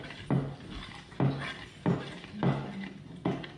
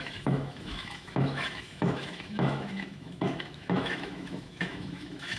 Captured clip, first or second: first